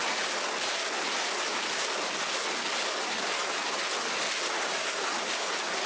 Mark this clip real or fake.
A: real